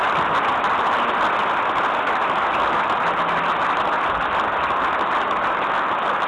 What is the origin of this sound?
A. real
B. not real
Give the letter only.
A